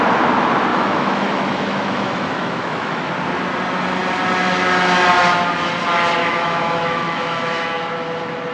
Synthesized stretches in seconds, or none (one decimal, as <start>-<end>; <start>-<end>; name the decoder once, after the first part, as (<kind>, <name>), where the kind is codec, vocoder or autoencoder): 0.7-3.1 (autoencoder, DAC-VAE); 6.2-7.8